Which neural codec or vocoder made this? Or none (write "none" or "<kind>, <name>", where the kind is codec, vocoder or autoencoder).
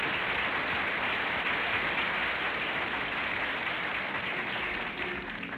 none